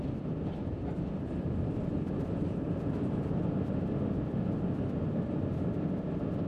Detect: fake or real real